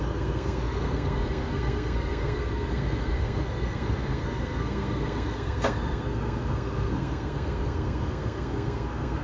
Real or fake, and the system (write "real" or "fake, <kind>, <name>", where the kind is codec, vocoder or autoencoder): fake, codec, SNAC